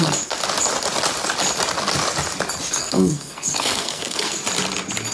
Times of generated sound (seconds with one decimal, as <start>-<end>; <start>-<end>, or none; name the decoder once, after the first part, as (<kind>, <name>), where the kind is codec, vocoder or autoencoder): 0.0-0.4 (codec, SNAC); 2.7-4.4